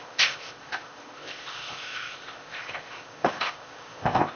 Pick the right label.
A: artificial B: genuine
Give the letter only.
A